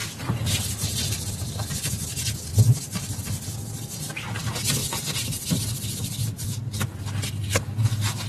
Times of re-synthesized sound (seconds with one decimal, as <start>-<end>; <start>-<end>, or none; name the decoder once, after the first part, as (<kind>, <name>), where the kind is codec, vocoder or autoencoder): 0.0-1.3 (vocoder, BigVGAN v2); 4.8-7.0